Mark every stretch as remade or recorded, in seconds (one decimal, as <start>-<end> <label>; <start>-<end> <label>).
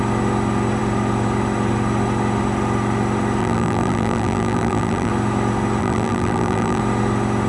0.0-3.4 recorded; 3.4-5.1 remade; 5.1-5.8 recorded; 5.8-6.8 remade; 6.8-7.5 recorded